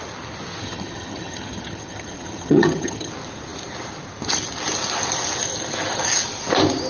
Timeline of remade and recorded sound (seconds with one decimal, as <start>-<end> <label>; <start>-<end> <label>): 0.0-0.6 recorded; 0.6-3.1 remade; 3.1-6.9 recorded